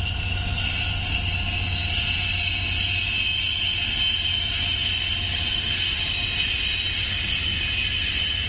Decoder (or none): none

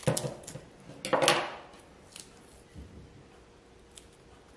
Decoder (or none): none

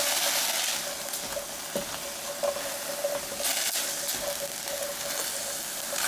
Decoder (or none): none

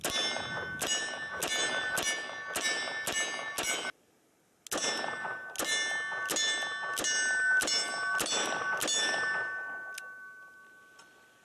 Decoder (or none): none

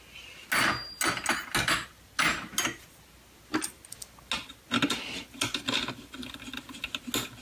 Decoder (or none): none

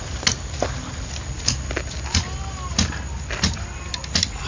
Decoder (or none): none